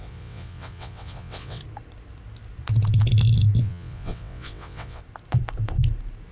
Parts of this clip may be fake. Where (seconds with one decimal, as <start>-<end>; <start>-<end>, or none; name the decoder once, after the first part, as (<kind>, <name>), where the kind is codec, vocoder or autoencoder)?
0.0-1.6 (vocoder, WaveNeXt); 3.6-5.0